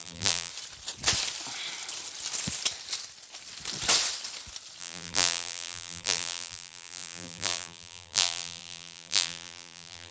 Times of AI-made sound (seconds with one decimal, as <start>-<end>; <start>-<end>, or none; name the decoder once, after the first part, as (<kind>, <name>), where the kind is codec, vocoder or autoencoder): 0.0-0.5 (vocoder, BigVGAN v2); 4.8-10.1